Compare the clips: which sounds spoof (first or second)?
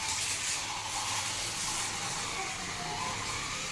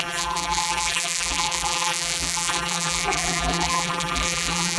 second